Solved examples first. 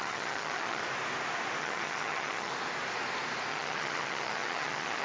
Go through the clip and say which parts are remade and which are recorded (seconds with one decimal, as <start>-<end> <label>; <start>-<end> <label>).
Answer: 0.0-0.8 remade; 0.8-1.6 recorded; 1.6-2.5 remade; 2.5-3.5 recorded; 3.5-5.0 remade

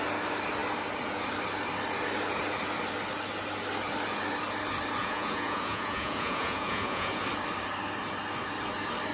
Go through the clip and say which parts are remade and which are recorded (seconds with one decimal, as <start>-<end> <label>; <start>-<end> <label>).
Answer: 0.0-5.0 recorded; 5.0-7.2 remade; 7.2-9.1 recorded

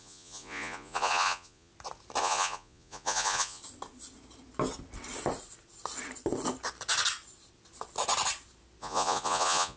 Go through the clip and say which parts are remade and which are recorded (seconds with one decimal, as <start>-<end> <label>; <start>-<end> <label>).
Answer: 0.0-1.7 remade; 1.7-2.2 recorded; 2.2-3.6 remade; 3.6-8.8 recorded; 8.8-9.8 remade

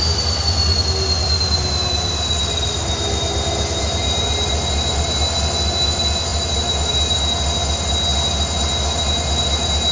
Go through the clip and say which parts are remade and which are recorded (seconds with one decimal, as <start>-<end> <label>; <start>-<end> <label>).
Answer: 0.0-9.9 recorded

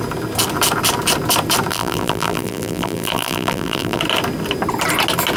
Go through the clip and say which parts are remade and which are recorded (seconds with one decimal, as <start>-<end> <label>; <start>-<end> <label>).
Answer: 0.0-1.7 recorded; 1.7-4.0 remade; 4.0-5.4 recorded

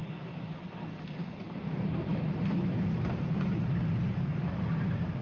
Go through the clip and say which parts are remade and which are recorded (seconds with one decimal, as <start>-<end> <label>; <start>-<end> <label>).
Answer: 0.0-2.1 recorded; 2.1-3.0 remade; 3.0-5.2 recorded

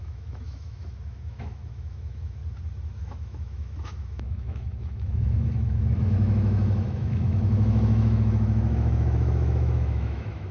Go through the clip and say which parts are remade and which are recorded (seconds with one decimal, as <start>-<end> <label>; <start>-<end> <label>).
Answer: 0.0-2.4 remade; 2.4-3.0 recorded; 3.0-10.5 remade